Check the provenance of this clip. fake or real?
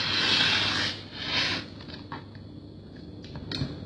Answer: real